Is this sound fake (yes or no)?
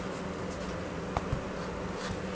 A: no